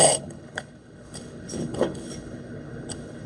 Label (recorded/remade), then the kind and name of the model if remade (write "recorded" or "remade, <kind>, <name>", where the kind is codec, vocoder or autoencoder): remade, codec, HILCodec